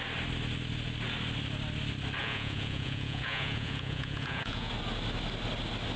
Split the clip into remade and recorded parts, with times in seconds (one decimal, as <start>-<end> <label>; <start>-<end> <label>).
0.0-2.2 recorded; 2.2-4.7 remade; 4.7-6.0 recorded

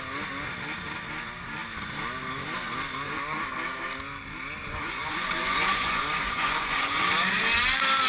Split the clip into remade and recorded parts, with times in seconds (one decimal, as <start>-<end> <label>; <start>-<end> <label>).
0.0-4.6 recorded; 4.6-7.0 remade; 7.0-8.1 recorded

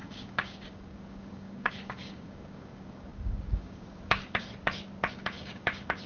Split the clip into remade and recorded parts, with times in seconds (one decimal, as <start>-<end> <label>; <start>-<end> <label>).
0.0-4.5 remade; 4.5-5.1 recorded; 5.1-6.1 remade

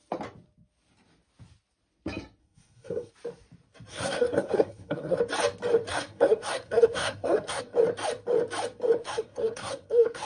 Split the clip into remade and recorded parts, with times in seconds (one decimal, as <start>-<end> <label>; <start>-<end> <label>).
0.0-2.4 recorded; 2.4-3.1 remade; 3.1-3.9 recorded; 3.9-5.2 remade; 5.2-5.9 recorded; 5.9-7.6 remade; 7.6-9.0 recorded; 9.0-10.3 remade